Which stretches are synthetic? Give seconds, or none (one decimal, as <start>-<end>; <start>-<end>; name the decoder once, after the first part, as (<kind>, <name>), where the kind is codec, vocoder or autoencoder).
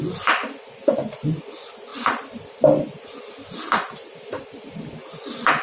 none